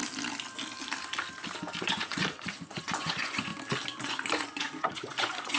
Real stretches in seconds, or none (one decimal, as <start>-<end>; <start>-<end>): 0.0-1.8; 3.5-4.0